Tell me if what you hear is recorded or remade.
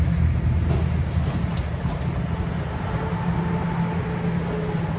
recorded